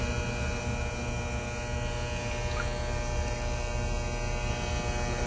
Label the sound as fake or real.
real